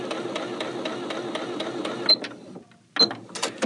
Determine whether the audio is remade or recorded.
recorded